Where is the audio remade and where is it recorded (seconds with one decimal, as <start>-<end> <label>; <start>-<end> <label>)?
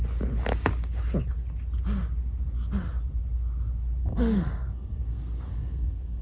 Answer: 0.0-4.0 recorded; 4.0-6.2 remade